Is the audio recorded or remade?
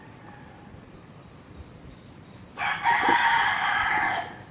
remade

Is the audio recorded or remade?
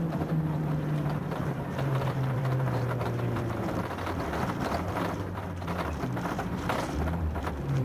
remade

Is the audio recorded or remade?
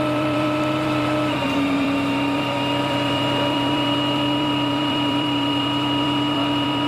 remade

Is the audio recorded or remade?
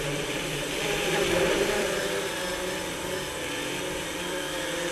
remade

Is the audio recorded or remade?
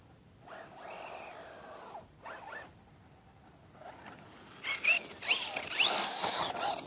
recorded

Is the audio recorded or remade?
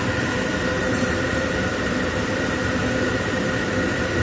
remade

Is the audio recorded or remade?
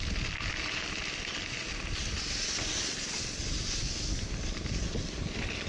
recorded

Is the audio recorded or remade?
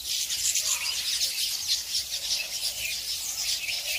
recorded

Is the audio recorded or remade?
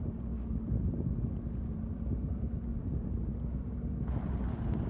recorded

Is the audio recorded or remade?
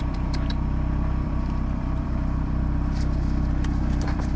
remade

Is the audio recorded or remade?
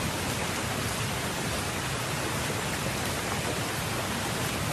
recorded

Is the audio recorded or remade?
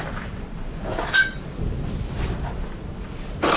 remade